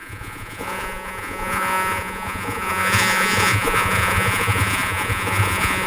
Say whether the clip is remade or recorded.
remade